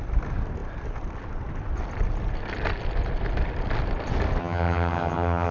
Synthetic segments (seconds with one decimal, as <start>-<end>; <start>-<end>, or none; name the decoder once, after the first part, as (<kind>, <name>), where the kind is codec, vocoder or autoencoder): 4.4-5.5 (vocoder, HiFi-GAN)